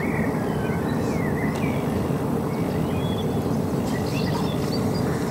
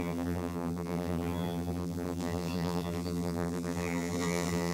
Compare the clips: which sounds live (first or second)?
first